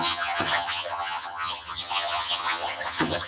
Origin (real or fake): fake